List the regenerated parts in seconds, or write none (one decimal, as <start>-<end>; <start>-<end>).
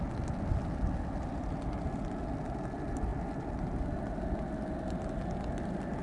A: none